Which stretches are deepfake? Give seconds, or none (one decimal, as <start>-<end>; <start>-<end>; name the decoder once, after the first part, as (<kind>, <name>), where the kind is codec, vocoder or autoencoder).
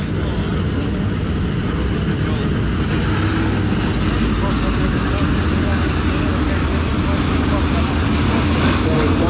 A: none